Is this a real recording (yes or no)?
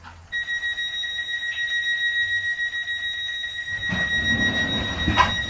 yes